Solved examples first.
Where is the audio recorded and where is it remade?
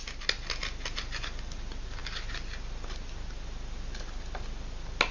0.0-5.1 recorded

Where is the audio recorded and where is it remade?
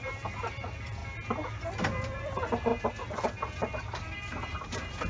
0.0-1.0 remade; 1.0-2.2 recorded; 2.2-2.7 remade; 2.7-3.8 recorded; 3.8-5.1 remade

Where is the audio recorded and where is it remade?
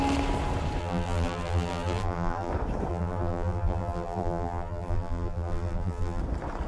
0.0-0.8 recorded; 0.8-2.5 remade; 2.5-2.9 recorded; 2.9-6.2 remade; 6.2-6.7 recorded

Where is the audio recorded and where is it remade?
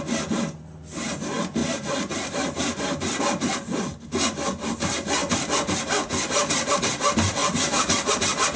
0.0-1.6 recorded; 1.6-3.2 remade; 3.2-7.4 recorded; 7.4-8.1 remade; 8.1-8.6 recorded